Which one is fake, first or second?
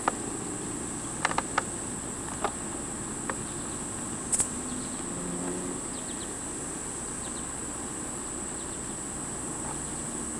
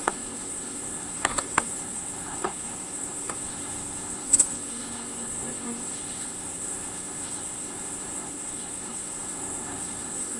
second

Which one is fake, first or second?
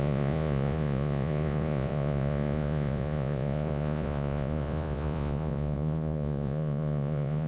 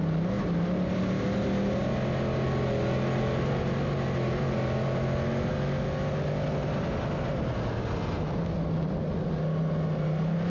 first